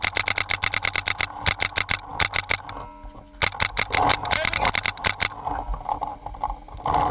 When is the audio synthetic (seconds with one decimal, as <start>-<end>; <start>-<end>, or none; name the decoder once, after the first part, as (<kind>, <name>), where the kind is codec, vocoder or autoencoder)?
none